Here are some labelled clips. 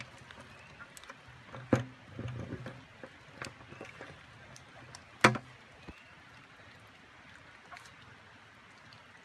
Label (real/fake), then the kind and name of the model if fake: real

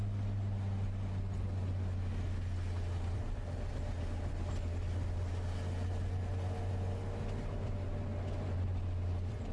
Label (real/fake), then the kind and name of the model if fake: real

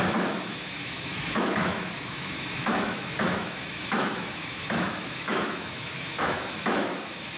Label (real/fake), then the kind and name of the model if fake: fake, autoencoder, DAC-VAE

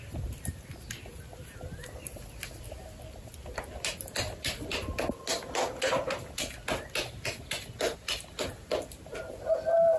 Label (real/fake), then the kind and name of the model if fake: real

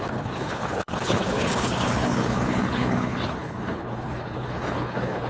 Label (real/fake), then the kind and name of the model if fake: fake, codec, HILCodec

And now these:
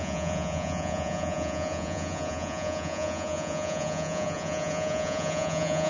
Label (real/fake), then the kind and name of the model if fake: fake, vocoder, Vocos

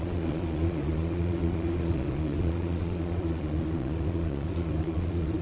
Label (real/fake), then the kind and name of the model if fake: fake, vocoder, Vocos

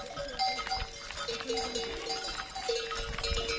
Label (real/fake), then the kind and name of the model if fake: real